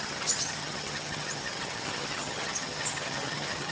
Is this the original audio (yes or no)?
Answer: no